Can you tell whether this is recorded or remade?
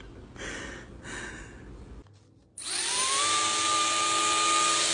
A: recorded